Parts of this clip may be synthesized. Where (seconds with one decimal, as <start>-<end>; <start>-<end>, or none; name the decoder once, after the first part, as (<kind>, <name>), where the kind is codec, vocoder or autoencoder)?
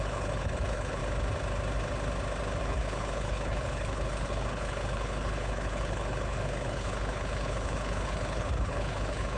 0.0-1.0 (codec, HILCodec); 2.6-9.4